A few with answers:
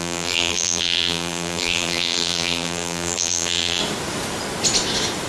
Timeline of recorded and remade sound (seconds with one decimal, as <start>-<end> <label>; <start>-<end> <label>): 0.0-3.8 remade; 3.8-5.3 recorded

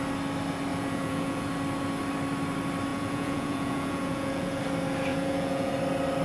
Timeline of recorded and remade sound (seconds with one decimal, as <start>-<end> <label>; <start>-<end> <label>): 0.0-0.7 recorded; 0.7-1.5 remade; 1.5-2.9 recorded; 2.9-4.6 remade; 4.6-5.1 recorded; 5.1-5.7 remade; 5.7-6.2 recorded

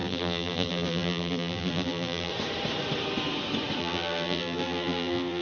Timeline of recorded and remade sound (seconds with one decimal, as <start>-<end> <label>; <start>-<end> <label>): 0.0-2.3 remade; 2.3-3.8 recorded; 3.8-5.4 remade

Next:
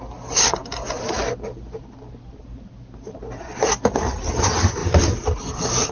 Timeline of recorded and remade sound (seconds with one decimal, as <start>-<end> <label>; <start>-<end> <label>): 0.0-5.9 recorded

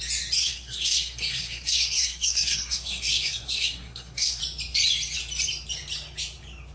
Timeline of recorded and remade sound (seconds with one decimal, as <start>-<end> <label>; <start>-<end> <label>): 0.0-0.4 recorded; 0.4-4.4 remade; 4.4-6.7 recorded

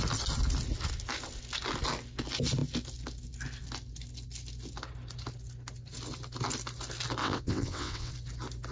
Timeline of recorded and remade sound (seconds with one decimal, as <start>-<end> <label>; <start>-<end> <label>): 0.0-7.2 recorded; 7.2-8.1 remade; 8.1-8.7 recorded

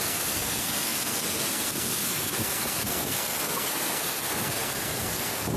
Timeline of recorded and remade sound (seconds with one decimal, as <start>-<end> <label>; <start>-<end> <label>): 0.0-5.6 remade

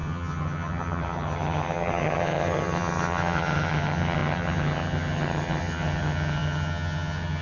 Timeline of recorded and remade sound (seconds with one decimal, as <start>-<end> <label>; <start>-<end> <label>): 0.0-7.4 remade